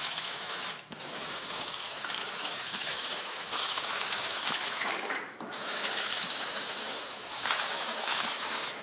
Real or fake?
fake